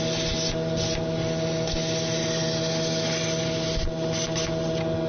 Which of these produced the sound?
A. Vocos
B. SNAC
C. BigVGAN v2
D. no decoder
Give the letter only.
D